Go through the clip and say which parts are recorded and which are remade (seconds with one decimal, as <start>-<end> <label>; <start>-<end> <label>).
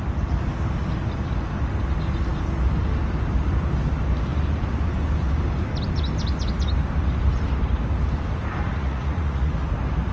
0.0-8.7 recorded; 8.7-9.5 remade; 9.5-10.1 recorded